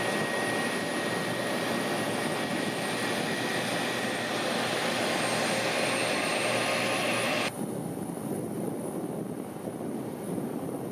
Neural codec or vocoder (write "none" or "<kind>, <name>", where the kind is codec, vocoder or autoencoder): none